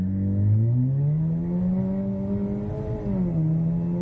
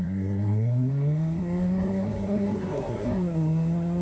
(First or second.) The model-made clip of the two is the second